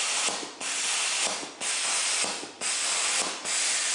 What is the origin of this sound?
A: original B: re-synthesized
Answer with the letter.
A